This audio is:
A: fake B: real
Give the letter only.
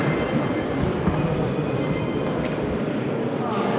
B